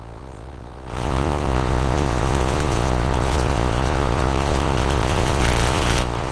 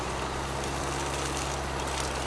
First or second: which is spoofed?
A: first